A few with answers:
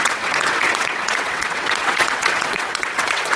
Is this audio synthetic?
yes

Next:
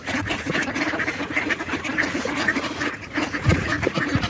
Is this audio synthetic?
yes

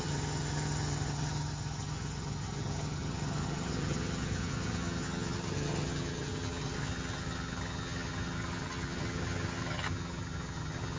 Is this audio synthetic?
yes